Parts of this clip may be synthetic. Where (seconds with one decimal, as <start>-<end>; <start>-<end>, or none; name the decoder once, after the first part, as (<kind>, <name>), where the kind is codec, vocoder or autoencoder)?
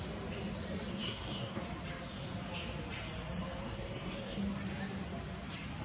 0.9-1.6 (codec, SNAC); 3.6-4.4